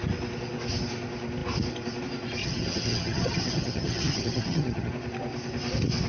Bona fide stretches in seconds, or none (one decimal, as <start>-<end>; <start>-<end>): 0.0-2.4; 4.9-6.1